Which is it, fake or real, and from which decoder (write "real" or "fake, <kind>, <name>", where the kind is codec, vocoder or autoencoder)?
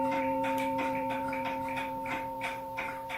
fake, vocoder, BigVGAN v2